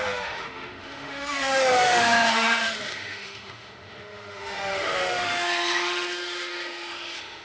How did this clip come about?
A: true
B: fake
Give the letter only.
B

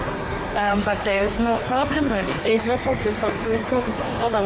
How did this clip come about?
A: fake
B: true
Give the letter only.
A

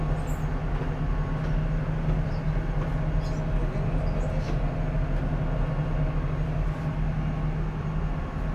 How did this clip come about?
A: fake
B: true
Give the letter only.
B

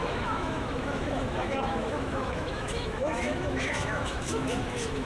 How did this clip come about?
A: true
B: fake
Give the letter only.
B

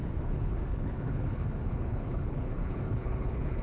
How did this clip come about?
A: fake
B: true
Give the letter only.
A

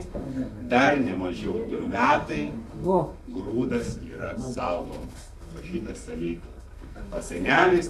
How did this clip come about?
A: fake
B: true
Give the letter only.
A